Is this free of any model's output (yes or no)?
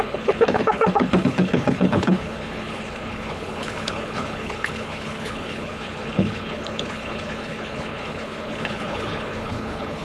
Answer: no